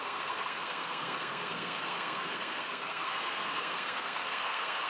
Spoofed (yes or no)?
yes